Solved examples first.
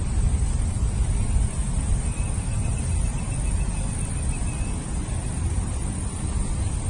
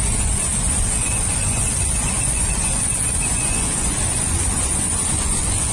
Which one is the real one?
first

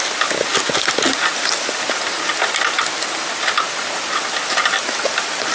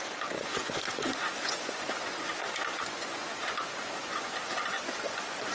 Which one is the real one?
first